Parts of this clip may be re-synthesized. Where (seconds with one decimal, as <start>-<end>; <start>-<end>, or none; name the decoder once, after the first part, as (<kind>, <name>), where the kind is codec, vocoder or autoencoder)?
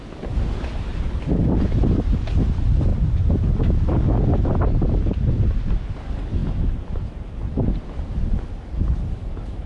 0.9-1.5 (vocoder, BigVGAN v2); 2.9-3.5; 4.3-5.6